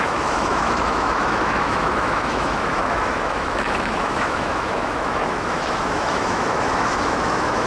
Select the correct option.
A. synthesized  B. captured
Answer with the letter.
A